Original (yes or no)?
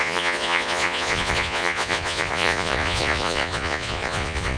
no